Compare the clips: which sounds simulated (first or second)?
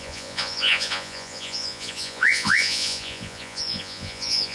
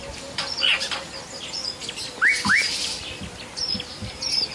first